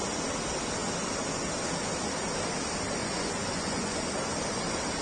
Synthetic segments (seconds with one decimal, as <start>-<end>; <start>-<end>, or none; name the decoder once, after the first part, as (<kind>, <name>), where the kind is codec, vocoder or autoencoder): 3.0-4.0 (vocoder, Vocos)